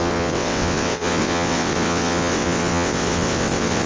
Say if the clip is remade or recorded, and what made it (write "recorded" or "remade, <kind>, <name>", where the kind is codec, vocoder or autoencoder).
remade, vocoder, WaveNeXt